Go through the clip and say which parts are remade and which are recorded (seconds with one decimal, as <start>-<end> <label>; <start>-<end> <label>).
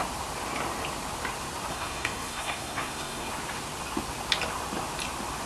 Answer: 0.0-1.7 recorded; 1.7-3.3 remade; 3.3-5.5 recorded